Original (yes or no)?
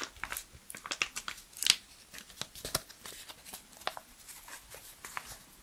yes